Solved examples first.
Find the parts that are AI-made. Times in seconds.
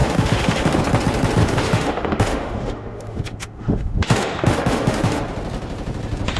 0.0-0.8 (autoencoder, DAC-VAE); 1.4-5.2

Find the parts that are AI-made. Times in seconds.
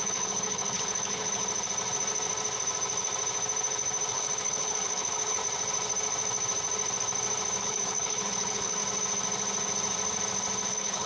0.0-1.4 (codec, HILCodec); 4.1-5.4; 7.6-8.8; 10.7-11.1